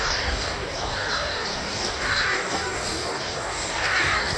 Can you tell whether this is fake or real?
fake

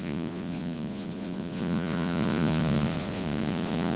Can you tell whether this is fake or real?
fake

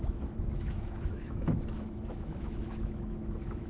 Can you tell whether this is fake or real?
fake